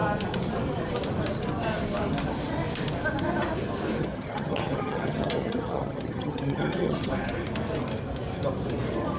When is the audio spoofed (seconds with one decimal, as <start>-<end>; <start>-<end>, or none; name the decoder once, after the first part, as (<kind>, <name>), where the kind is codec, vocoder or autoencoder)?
4.0-7.1 (vocoder, HiFi-GAN)